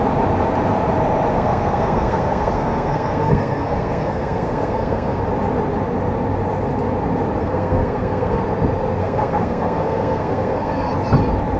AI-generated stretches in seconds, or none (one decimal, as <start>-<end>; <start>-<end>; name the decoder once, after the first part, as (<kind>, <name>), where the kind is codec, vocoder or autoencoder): 1.3-5.2 (codec, SNAC); 7.4-8.4; 9.0-10.9